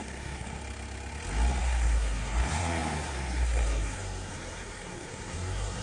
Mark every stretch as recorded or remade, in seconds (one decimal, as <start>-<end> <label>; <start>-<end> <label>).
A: 0.0-0.6 remade; 0.6-1.6 recorded; 1.6-5.8 remade